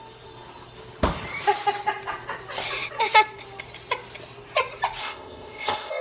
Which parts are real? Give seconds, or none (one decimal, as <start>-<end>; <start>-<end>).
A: 0.0-5.0